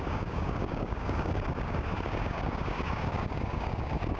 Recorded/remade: remade